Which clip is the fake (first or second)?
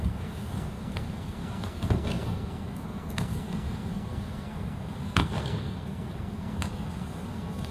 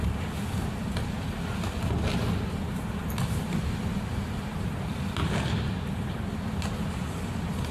first